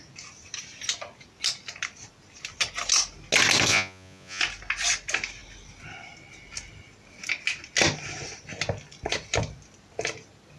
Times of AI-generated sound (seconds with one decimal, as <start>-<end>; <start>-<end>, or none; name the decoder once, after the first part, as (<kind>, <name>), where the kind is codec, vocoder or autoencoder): 3.7-4.4 (vocoder, Vocos)